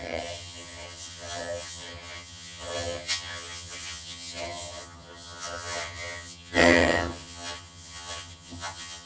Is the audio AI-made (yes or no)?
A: yes